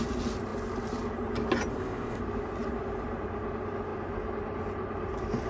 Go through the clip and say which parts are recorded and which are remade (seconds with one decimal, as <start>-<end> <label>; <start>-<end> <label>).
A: 0.0-1.7 recorded; 1.7-2.2 remade; 2.2-5.5 recorded